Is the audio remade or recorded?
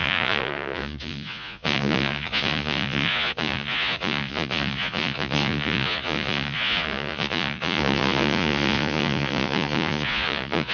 remade